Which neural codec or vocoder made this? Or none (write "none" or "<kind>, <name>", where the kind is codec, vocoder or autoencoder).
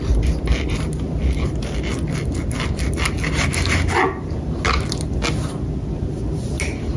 none